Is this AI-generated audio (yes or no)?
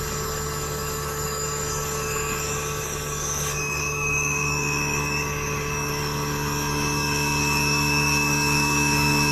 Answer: yes